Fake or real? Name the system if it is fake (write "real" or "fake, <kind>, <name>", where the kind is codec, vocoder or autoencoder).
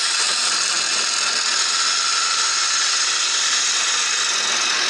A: real